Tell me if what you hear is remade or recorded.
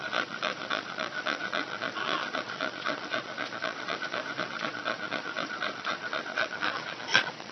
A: remade